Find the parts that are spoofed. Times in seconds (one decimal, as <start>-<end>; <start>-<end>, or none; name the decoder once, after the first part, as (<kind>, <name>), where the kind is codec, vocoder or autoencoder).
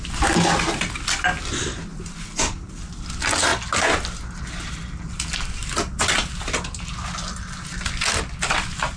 none